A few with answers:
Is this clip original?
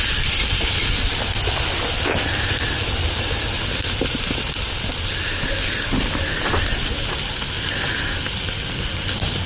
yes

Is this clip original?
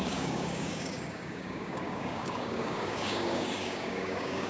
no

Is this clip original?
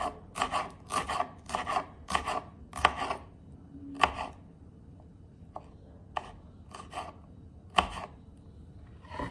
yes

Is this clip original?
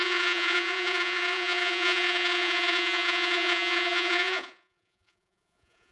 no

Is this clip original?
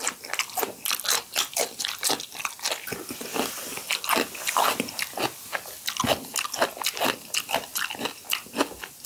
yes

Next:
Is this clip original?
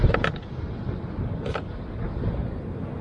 yes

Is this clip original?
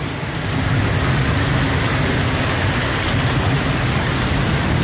yes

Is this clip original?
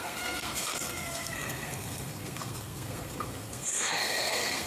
no